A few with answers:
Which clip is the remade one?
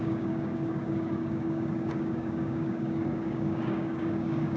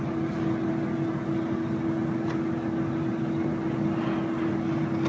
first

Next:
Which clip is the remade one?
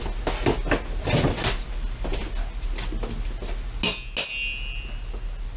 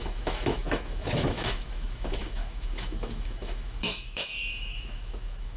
second